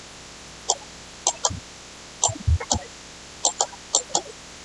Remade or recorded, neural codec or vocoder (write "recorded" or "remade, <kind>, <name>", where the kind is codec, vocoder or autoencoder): recorded